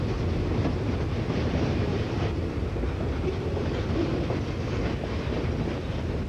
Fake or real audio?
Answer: real